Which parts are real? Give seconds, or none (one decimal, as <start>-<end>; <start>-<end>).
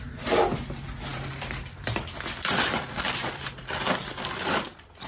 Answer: 0.0-1.1; 3.6-5.1